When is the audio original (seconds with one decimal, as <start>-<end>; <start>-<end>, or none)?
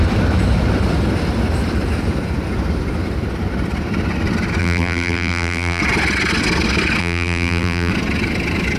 0.0-4.6; 5.8-7.0; 7.9-8.8